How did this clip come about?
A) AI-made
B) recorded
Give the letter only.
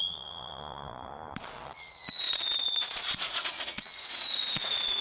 A